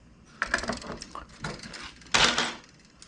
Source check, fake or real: real